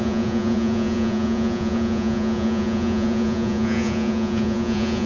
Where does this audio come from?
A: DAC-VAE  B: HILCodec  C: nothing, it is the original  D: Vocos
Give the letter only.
D